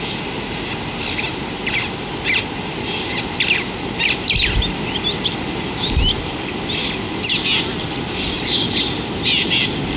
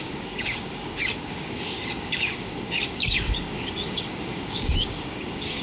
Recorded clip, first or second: first